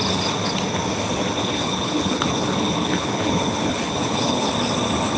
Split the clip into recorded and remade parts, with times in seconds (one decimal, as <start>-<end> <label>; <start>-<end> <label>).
0.0-1.4 recorded; 1.4-4.5 remade; 4.5-5.2 recorded